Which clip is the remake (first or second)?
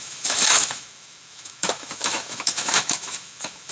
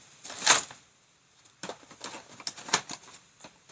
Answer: first